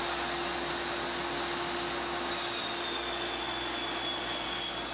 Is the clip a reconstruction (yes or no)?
no